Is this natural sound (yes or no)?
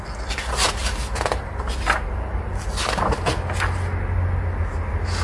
yes